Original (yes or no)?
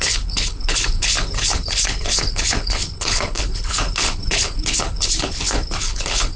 no